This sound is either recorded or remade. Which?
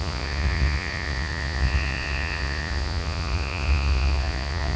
remade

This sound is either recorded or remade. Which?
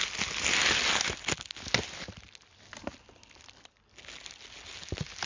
recorded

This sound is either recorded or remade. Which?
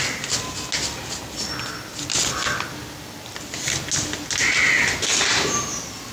recorded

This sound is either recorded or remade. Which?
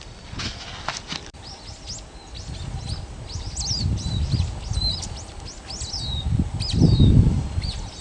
recorded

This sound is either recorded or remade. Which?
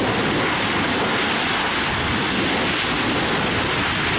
recorded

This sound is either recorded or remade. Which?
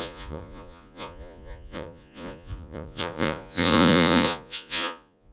remade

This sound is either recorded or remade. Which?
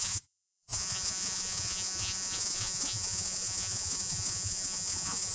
remade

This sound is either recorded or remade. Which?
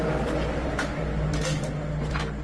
recorded